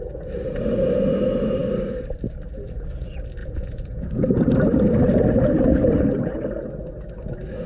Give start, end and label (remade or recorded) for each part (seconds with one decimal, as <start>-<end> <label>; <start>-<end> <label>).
0.0-3.4 recorded; 3.4-4.4 remade; 4.4-7.7 recorded